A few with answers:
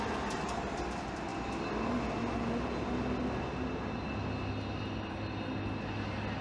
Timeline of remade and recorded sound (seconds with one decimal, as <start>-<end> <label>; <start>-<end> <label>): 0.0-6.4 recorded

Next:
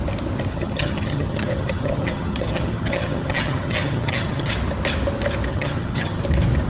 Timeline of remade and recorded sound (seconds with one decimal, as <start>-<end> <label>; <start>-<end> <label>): 0.0-0.5 recorded; 0.5-4.5 remade; 4.5-5.5 recorded; 5.5-6.2 remade; 6.2-6.7 recorded

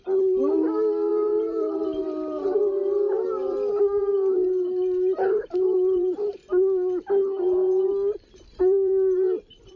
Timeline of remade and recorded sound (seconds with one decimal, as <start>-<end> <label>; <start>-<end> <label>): 0.0-6.4 remade; 6.4-8.6 recorded; 8.6-9.8 remade

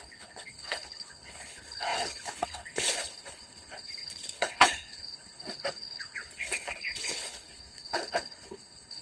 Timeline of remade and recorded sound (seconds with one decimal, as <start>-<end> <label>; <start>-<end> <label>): 0.0-9.0 remade

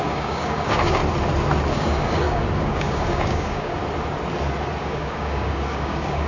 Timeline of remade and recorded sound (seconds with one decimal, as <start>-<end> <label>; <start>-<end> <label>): 0.0-1.0 remade; 1.0-1.7 recorded; 1.7-3.8 remade; 3.8-4.8 recorded; 4.8-6.3 remade